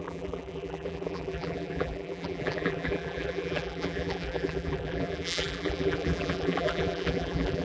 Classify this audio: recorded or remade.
remade